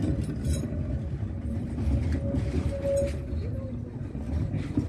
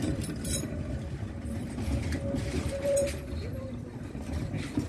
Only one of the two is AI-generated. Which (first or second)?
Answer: second